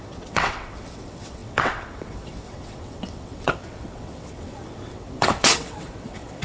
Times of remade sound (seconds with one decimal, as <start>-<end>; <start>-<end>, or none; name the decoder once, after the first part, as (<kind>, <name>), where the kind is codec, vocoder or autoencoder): 0.0-6.4 (vocoder, WaveNeXt)